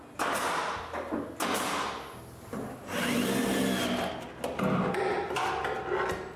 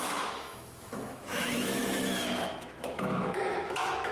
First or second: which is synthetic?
second